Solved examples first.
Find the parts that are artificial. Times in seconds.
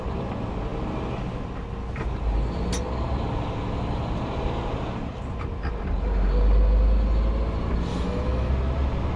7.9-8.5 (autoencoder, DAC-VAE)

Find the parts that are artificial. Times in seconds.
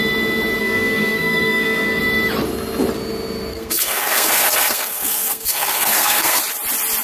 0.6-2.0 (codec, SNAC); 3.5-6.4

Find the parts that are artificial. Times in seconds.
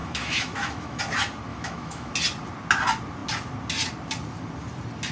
0.0-1.0 (autoencoder, DAC-VAE); 1.5-2.1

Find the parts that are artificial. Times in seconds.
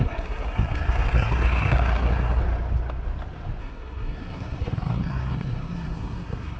0.0-2.4 (codec, SNAC); 3.6-6.6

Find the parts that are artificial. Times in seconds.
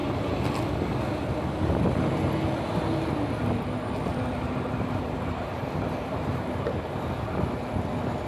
4.1-7.0 (vocoder, BigVGAN v2)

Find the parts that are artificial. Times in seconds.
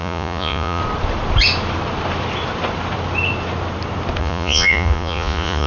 0.0-0.8 (vocoder, Vocos); 4.2-5.7